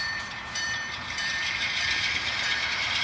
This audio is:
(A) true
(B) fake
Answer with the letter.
B